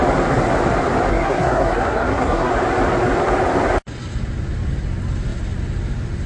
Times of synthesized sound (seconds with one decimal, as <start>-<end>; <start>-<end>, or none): 1.1-2.5